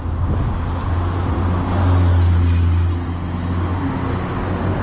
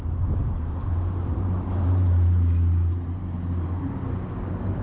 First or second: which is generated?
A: second